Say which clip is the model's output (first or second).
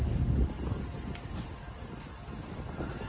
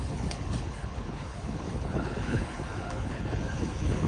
second